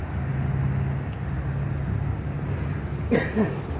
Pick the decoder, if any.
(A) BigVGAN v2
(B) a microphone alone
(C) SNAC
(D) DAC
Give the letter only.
B